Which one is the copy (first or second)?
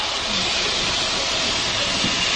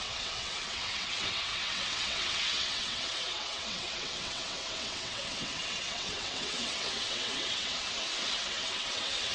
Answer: second